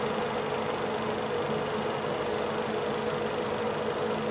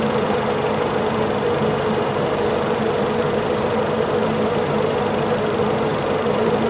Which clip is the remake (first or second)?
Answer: second